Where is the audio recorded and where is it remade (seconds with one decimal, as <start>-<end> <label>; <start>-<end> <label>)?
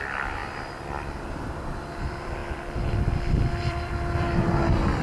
0.0-5.0 remade